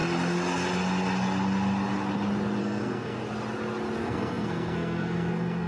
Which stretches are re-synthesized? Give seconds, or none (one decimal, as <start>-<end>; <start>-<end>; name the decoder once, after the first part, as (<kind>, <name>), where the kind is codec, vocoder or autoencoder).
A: 2.6-3.2 (codec, SNAC); 4.0-5.7